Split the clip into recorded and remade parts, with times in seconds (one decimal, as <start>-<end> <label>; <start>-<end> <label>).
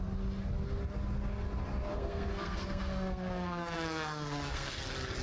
0.0-1.9 recorded; 1.9-4.8 remade; 4.8-5.2 recorded